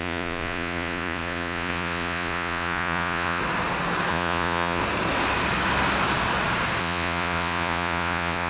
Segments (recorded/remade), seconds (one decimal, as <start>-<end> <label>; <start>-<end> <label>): 0.0-3.4 remade; 3.4-4.1 recorded; 4.1-4.8 remade; 4.8-6.8 recorded; 6.8-8.5 remade